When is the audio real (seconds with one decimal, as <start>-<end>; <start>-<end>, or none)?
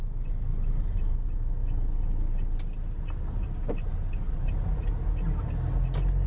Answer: 0.0-6.3